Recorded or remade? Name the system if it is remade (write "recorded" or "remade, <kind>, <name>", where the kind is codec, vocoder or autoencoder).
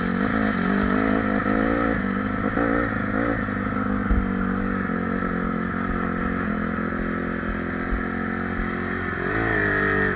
recorded